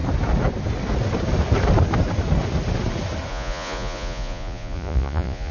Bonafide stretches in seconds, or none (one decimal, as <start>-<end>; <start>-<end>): 0.0-3.3